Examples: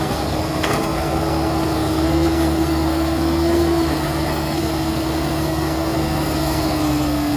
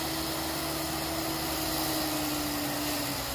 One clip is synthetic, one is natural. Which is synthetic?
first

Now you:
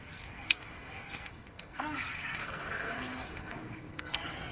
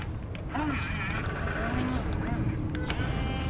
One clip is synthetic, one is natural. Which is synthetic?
first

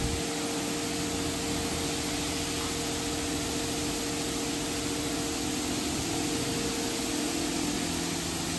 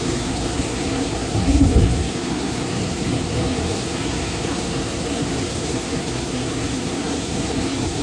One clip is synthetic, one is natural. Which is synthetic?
second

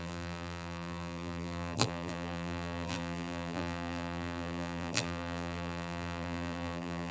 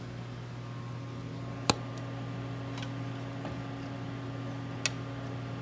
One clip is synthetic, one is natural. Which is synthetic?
first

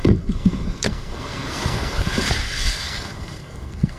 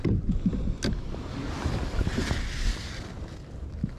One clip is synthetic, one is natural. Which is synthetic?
first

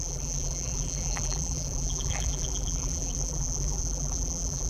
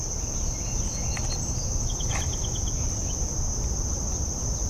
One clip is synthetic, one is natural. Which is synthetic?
first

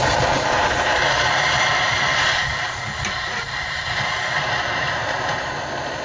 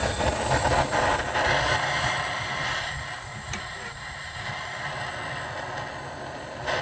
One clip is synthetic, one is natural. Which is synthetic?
first